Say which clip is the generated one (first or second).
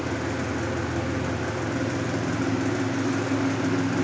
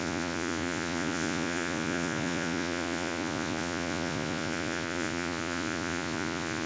second